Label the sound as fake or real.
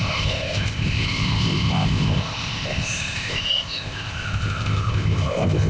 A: fake